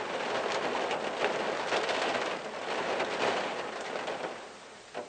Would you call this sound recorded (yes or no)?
yes